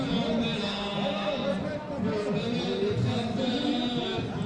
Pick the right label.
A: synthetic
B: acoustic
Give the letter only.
B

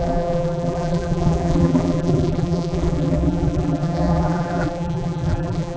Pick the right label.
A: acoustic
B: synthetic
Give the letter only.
B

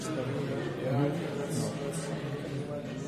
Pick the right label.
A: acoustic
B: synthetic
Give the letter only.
A